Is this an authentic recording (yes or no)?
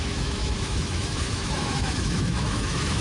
no